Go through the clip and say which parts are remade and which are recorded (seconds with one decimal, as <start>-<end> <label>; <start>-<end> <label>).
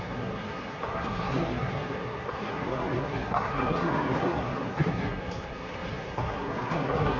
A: 0.0-7.2 remade